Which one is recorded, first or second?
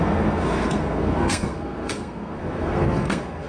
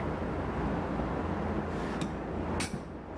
second